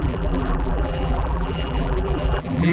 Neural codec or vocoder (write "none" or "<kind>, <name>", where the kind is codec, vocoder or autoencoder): vocoder, BigVGAN v2